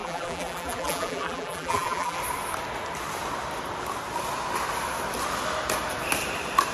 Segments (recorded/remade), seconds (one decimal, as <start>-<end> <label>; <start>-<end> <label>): 0.0-2.2 remade; 2.2-6.7 recorded